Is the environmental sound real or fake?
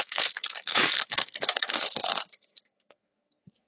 fake